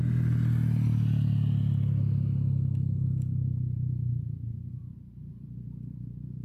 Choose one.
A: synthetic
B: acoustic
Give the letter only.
B